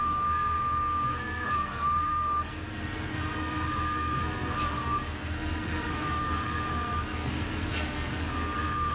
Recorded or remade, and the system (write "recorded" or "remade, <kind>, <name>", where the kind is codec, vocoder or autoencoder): remade, codec, SNAC